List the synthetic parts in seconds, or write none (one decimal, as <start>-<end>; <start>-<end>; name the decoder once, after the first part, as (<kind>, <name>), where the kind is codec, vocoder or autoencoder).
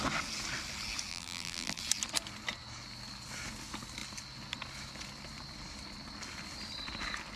1.1-1.8 (vocoder, BigVGAN v2)